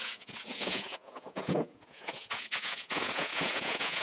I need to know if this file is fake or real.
fake